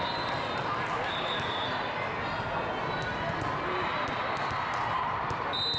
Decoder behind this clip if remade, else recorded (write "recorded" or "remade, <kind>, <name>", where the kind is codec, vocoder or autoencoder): recorded